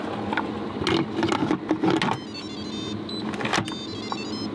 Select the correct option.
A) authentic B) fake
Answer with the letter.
A